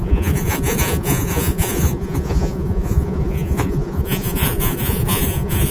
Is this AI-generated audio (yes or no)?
yes